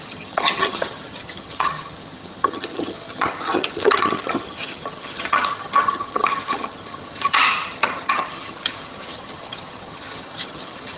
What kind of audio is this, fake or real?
fake